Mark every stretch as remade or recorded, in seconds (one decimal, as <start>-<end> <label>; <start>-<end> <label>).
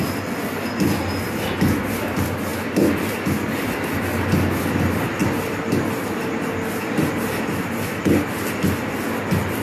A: 0.0-9.6 recorded